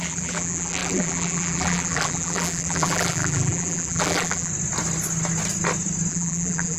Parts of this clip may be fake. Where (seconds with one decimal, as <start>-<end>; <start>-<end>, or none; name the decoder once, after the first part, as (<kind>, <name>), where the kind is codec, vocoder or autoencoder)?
0.0-4.5 (vocoder, BigVGAN v2); 6.1-6.8